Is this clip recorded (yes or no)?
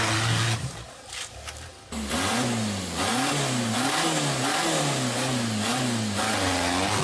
yes